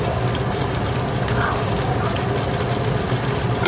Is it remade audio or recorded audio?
recorded